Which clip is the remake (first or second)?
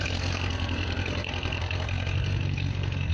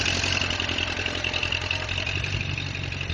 first